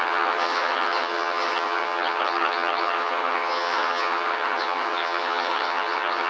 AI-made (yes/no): yes